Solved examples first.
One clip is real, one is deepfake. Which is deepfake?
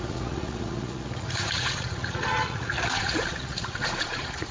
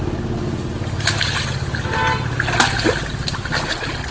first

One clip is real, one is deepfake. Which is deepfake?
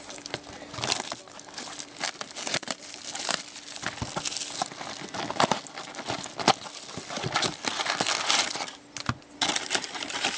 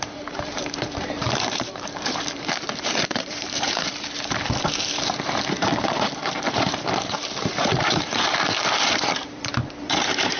second